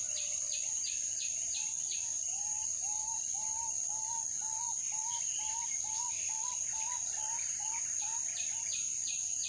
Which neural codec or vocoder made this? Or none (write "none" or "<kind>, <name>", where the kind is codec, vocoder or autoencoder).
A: none